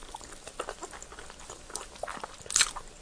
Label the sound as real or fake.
real